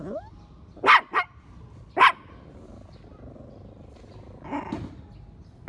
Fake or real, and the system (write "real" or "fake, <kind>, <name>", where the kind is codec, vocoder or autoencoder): real